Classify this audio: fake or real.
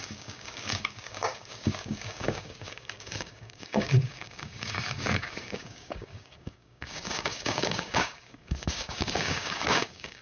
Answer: fake